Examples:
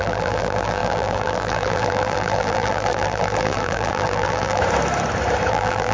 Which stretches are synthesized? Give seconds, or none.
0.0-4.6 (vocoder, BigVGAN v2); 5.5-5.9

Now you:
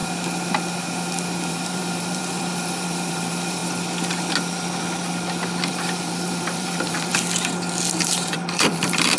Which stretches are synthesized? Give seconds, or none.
1.5-3.6 (vocoder, BigVGAN v2); 5.7-7.1; 8.0-9.2

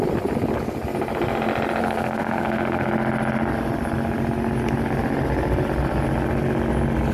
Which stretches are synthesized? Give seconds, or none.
1.8-2.9 (codec, SNAC)

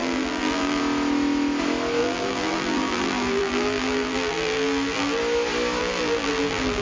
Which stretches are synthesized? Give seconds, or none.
0.0-0.8 (vocoder, BigVGAN v2); 2.0-5.2; 5.8-6.8

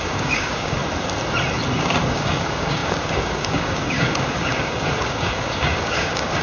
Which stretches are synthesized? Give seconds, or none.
0.0-0.8 (codec, DAC); 1.8-6.4